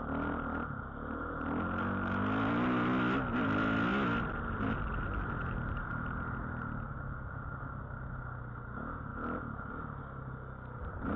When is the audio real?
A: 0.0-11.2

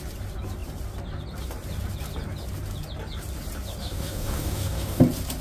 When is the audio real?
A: 0.0-3.8; 5.0-5.4

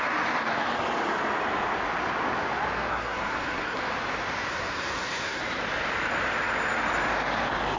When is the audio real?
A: 0.0-2.9; 3.8-4.5; 5.4-7.8

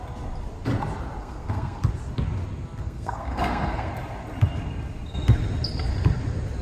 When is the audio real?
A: 0.0-1.2; 1.8-2.8; 3.9-6.6